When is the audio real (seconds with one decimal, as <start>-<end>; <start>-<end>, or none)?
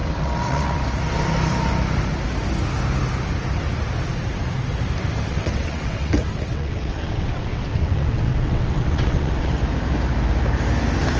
0.8-5.3; 9.5-11.2